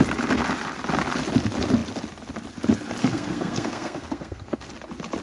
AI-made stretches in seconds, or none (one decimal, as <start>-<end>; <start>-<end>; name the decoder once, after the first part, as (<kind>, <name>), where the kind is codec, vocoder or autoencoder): 3.0-4.7 (codec, SNAC)